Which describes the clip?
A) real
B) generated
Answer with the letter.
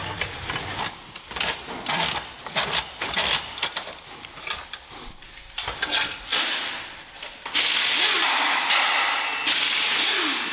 A